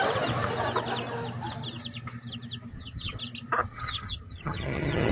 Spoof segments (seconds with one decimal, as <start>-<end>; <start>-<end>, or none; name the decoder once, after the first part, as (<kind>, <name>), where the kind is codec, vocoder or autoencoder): 2.7-3.2 (vocoder, HiFi-GAN); 3.6-5.1